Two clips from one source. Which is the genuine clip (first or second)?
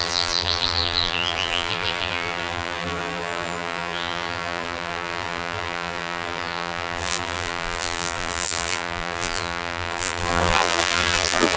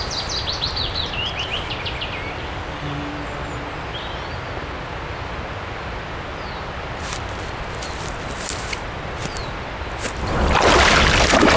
second